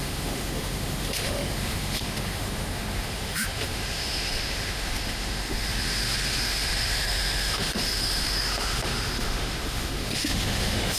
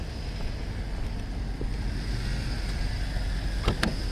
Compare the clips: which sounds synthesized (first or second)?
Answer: first